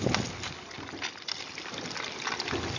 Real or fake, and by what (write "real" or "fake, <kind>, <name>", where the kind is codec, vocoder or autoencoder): real